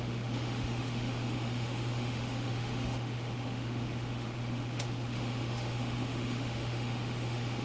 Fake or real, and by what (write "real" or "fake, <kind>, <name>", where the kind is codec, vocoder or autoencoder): fake, autoencoder, DAC-VAE